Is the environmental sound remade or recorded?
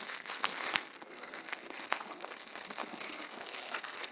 remade